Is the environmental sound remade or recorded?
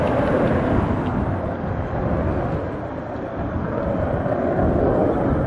recorded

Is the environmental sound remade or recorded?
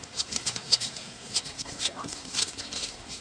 remade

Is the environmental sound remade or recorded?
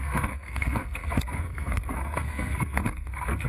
remade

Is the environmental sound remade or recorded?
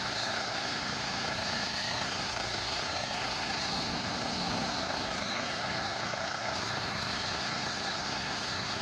remade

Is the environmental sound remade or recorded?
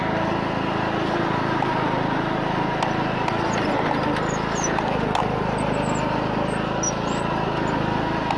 recorded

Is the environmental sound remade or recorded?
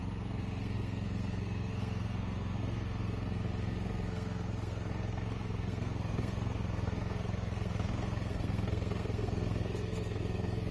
remade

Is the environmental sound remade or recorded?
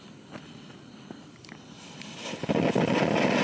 recorded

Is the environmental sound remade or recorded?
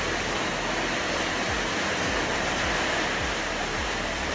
recorded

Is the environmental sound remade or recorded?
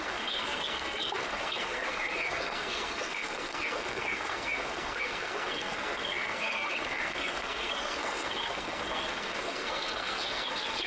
remade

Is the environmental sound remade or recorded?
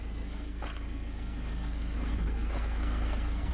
remade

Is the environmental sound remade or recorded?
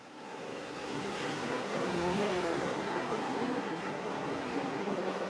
remade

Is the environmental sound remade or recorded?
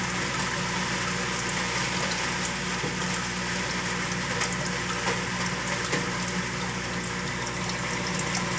recorded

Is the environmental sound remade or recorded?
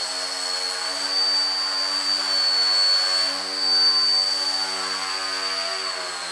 recorded